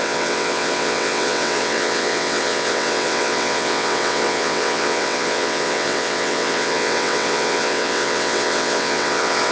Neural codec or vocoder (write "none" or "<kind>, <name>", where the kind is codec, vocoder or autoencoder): vocoder, WaveNeXt